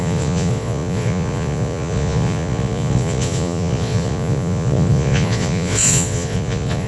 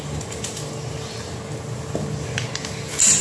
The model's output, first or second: first